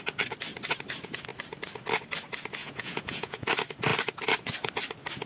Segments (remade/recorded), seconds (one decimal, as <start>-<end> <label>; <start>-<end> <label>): 0.0-2.6 recorded; 2.6-3.5 remade; 3.5-5.3 recorded